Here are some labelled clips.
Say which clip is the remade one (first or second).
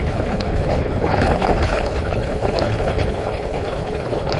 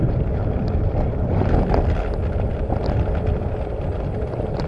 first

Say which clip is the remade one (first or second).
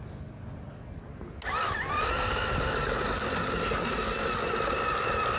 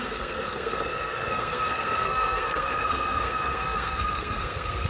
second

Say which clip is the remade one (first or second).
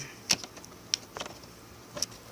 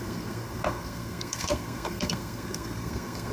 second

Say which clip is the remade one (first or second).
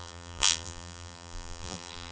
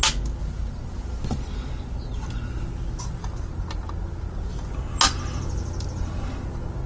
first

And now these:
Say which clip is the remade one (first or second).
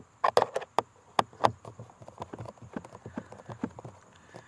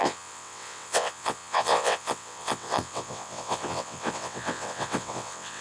second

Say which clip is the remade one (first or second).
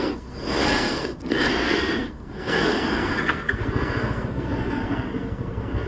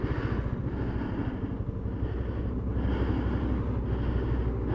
first